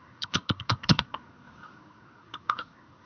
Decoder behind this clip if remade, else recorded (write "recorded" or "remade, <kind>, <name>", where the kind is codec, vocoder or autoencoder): remade, codec, SNAC